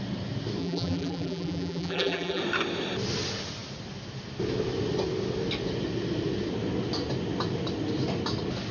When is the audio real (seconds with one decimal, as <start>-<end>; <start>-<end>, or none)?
0.0-0.6; 2.4-8.7